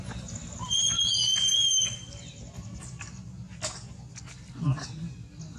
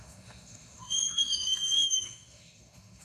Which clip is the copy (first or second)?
second